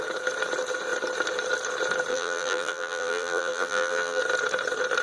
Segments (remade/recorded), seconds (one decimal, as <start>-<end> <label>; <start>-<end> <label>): 0.0-2.1 recorded; 2.1-4.2 remade; 4.2-5.0 recorded